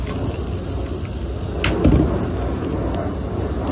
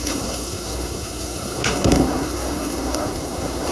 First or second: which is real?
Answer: first